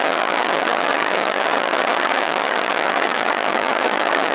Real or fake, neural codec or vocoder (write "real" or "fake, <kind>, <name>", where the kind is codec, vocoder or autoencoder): fake, vocoder, HiFi-GAN